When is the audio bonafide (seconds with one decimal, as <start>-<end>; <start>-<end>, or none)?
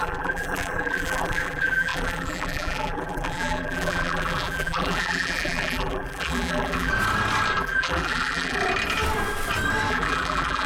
6.9-7.6; 8.6-9.9